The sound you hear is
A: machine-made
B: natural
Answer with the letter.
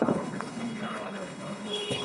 A